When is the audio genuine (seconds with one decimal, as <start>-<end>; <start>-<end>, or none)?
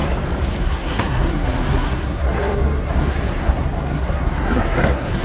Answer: 0.0-0.6